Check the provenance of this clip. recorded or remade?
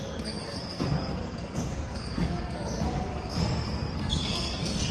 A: remade